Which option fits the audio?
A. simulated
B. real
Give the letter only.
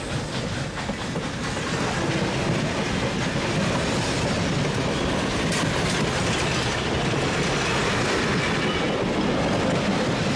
B